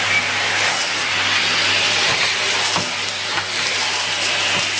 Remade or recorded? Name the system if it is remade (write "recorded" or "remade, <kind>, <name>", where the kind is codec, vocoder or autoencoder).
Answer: recorded